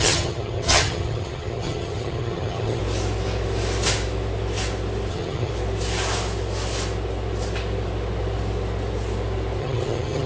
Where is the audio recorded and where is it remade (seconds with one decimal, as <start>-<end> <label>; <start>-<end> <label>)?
0.0-2.8 remade; 2.8-5.1 recorded; 5.1-5.5 remade; 5.5-9.6 recorded; 9.6-10.3 remade